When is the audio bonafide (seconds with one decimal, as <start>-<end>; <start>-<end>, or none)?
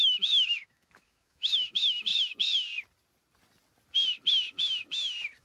2.1-5.4